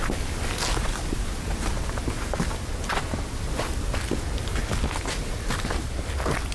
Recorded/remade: recorded